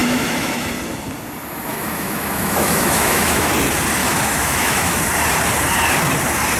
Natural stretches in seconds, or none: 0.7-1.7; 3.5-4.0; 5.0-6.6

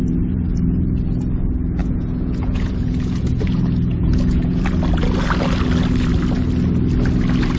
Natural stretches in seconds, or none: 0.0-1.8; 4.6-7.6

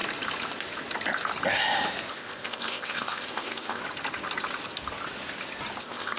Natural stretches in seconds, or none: 0.0-2.1; 3.8-5.8